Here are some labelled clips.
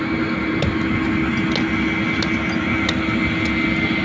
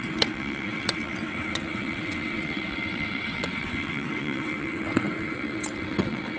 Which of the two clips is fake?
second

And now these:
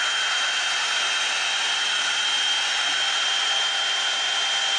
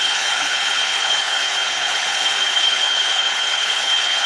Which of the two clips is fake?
second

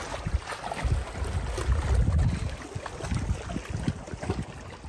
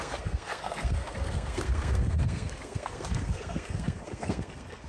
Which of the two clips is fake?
second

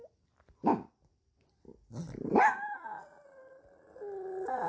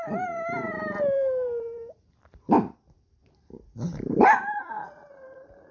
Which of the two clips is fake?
second